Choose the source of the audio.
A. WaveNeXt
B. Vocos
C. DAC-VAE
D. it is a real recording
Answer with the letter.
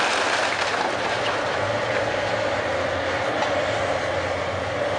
D